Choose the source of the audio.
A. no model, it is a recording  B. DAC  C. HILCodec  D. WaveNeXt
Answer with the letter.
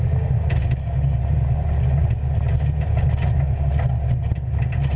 A